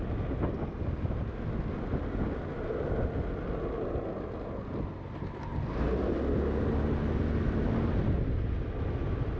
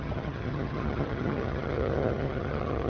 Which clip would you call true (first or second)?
first